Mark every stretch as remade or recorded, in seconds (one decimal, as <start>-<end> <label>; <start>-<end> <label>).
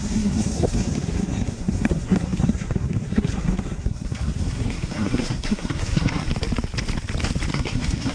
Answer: 0.0-6.3 remade; 6.3-7.5 recorded; 7.5-8.1 remade